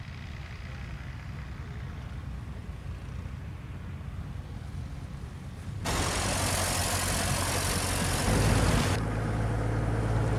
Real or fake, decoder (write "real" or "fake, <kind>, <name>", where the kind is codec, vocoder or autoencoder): real